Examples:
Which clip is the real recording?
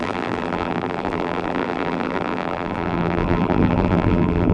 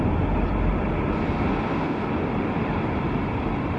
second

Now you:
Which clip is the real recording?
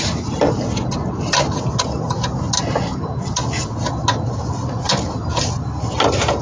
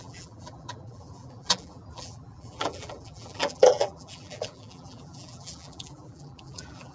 first